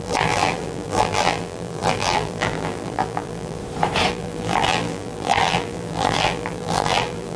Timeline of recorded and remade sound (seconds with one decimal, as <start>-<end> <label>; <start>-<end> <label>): 0.0-3.6 remade; 3.6-4.1 recorded; 4.1-7.4 remade